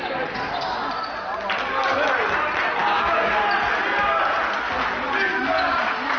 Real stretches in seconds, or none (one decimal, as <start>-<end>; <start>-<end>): 0.0-2.8; 3.3-5.3; 5.8-6.2